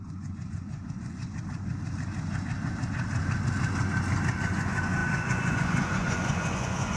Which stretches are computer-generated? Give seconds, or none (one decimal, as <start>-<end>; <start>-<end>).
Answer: 0.0-1.2; 4.4-7.0